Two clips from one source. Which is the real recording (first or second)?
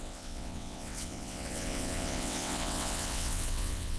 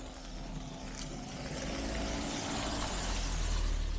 second